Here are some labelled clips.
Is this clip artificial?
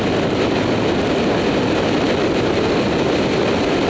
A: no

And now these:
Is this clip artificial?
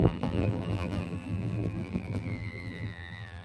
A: yes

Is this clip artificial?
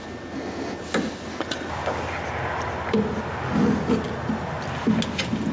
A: no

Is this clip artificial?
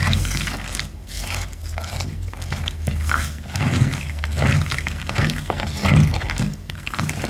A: yes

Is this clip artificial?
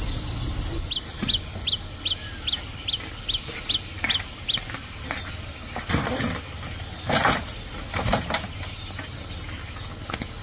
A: no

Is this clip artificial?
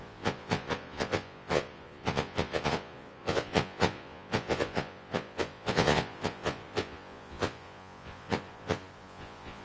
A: yes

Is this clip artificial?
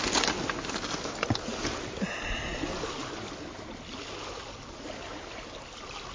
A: no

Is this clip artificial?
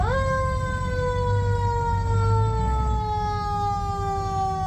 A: no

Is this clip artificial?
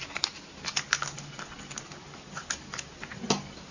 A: no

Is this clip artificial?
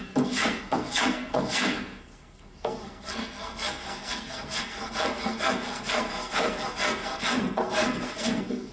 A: yes